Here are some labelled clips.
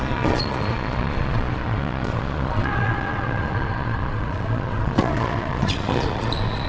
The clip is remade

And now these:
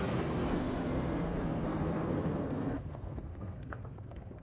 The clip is remade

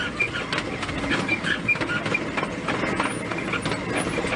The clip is recorded